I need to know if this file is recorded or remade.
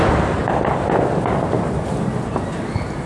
recorded